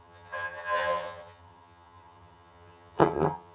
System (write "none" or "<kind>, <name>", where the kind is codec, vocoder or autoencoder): vocoder, HiFi-GAN